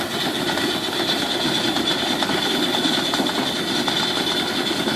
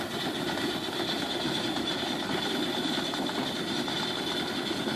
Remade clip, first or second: second